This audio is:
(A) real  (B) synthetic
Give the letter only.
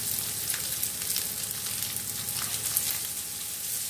A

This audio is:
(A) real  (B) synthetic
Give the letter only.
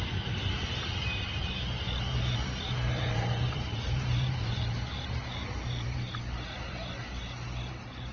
B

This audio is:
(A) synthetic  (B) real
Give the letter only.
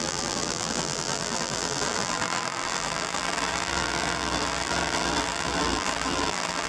A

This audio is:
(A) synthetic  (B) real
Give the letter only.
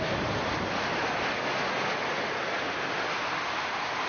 B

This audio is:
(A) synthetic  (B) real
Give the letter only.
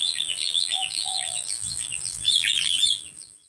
A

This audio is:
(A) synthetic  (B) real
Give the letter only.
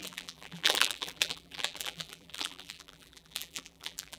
A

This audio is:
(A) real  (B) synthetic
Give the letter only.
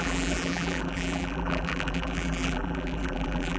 B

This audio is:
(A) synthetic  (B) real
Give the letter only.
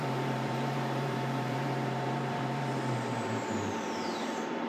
A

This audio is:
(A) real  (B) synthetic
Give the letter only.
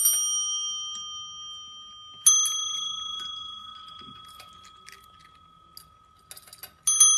A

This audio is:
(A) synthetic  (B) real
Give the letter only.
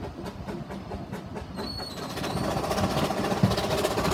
B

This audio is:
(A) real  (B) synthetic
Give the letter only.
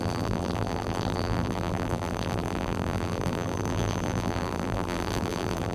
B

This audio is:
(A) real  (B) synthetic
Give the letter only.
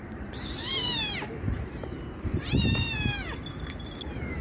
B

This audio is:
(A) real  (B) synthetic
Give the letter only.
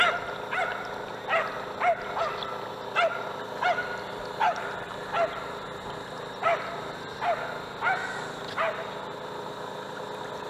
A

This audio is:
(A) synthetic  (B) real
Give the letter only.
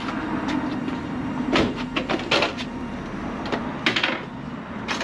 B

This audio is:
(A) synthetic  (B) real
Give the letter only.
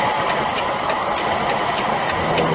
A